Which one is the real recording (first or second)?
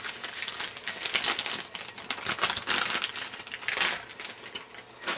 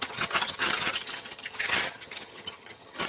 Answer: first